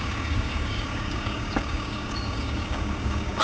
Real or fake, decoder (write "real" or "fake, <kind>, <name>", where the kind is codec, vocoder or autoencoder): fake, codec, DAC